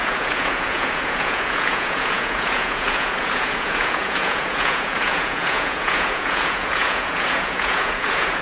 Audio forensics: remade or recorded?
remade